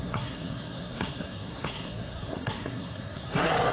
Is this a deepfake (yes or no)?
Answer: yes